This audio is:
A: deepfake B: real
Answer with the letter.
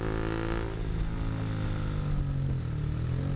B